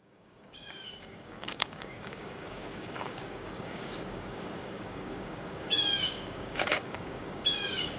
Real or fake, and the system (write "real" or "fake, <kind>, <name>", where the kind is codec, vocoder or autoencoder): fake, codec, DAC